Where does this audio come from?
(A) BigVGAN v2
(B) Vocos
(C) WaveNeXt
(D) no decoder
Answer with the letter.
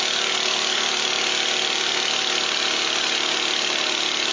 D